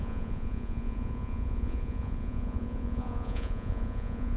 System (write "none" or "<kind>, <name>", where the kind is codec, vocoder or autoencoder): vocoder, Vocos